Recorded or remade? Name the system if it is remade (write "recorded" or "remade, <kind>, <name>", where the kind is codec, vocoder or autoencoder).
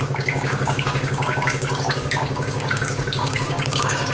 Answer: remade, codec, DAC